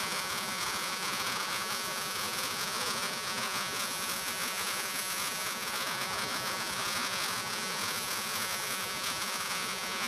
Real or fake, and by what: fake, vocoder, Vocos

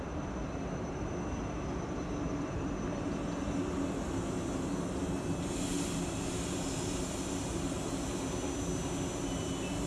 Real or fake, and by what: real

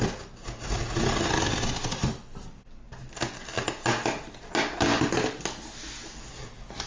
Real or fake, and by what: real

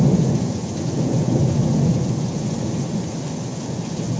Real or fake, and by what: fake, vocoder, Vocos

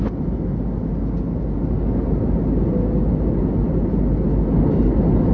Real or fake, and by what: real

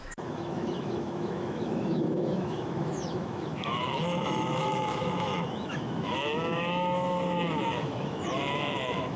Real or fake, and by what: fake, autoencoder, DAC-VAE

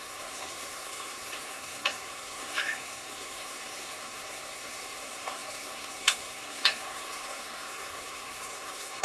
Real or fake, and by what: fake, codec, SNAC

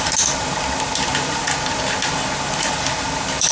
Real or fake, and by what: real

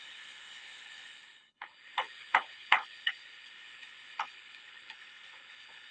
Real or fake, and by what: fake, codec, HILCodec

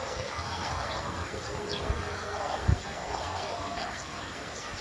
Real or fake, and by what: fake, codec, SNAC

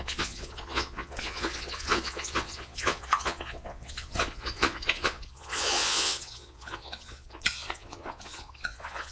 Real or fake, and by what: fake, vocoder, Vocos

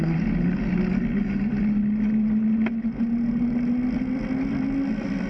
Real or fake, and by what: real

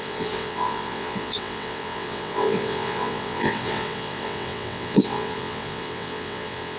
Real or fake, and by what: fake, vocoder, WaveNeXt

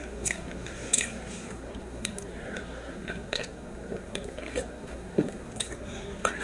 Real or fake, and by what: fake, codec, SNAC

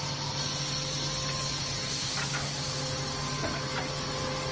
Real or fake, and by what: real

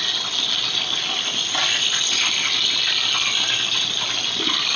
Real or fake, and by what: real